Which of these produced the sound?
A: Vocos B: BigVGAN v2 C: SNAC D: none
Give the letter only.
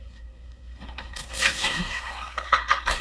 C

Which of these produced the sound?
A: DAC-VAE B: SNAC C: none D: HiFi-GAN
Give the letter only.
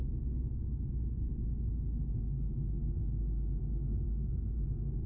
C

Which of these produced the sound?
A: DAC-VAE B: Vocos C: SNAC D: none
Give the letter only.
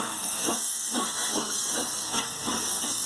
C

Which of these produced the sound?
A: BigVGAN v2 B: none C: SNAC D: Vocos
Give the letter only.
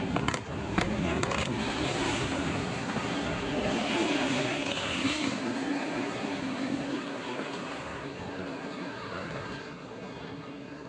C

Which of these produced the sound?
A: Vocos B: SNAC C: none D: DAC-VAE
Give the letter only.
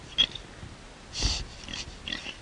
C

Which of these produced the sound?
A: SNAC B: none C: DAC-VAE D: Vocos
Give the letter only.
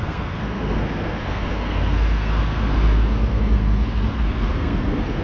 A